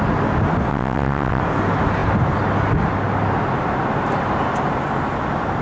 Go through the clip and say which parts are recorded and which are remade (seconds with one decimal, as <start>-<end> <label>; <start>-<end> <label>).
0.0-0.7 recorded; 0.7-1.4 remade; 1.4-5.6 recorded